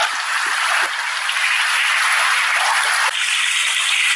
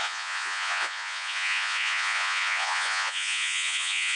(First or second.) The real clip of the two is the first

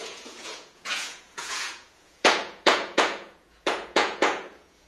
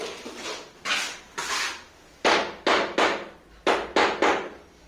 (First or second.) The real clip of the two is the second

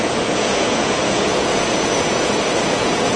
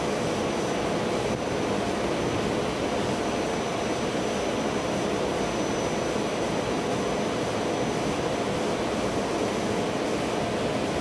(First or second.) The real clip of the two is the second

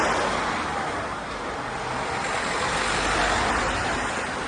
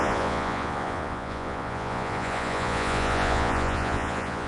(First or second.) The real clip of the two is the first